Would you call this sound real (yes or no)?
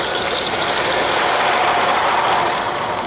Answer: yes